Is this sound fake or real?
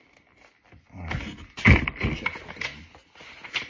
real